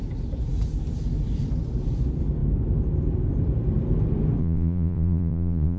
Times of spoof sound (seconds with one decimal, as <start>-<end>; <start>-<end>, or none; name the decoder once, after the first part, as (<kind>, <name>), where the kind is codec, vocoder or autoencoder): 4.4-5.8 (vocoder, Vocos)

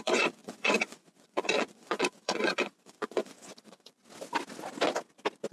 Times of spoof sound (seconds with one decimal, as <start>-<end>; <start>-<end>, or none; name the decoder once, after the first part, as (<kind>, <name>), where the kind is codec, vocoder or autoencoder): 0.0-4.0 (vocoder, Vocos)